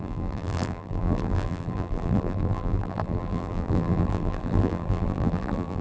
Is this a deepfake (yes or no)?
yes